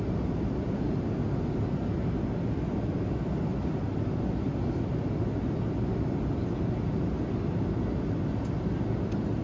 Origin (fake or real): real